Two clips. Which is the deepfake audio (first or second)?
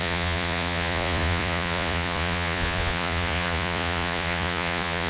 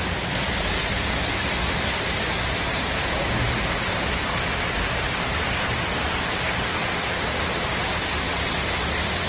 first